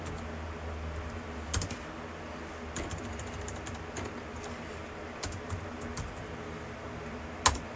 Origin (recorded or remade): recorded